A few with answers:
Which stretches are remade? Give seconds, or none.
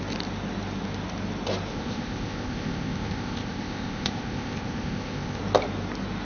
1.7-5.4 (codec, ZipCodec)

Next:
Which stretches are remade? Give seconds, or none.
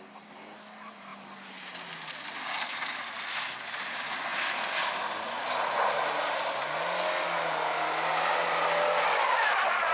none